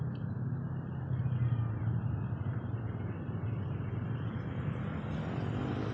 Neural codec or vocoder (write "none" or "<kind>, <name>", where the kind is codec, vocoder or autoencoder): none